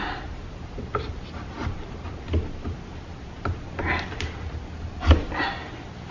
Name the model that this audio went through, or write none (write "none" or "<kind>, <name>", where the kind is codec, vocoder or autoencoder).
none